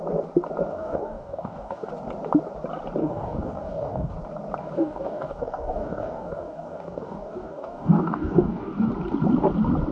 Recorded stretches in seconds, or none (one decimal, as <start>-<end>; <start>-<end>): 0.0-0.7; 1.9-3.0; 4.1-4.6; 8.9-9.9